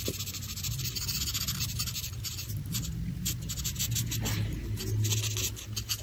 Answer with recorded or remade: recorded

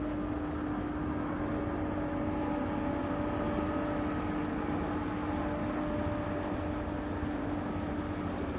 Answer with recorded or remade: recorded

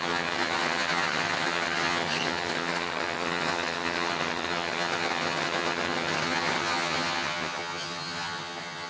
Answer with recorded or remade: remade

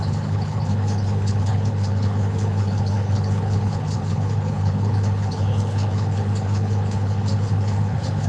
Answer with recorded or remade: remade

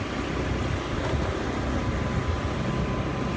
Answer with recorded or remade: recorded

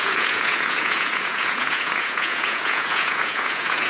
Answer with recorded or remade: remade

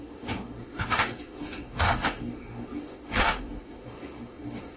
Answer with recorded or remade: remade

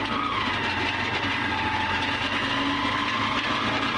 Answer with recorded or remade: recorded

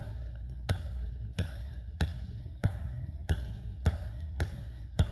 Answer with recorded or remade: remade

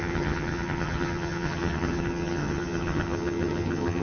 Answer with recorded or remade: remade